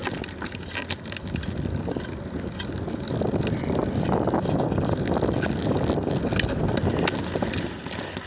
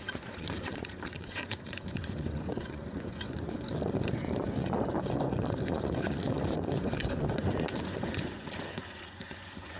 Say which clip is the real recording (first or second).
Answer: first